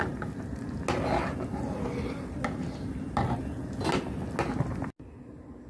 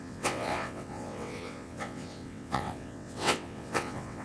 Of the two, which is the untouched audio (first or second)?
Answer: first